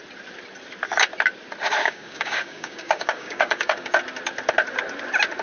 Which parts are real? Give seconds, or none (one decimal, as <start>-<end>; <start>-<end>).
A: 0.0-1.8; 4.0-5.4